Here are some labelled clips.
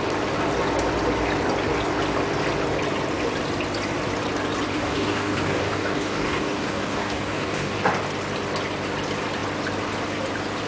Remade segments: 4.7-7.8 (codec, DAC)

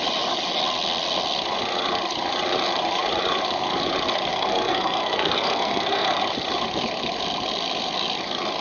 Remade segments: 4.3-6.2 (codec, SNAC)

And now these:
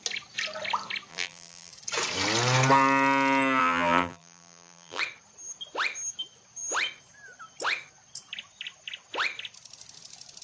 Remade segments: 1.1-1.7 (vocoder, BigVGAN v2); 3.6-5.0